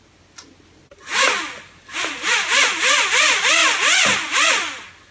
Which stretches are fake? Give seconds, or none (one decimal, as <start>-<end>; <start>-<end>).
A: none